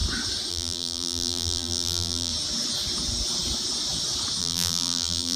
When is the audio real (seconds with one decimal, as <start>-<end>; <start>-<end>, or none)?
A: 0.0-0.5; 2.3-4.4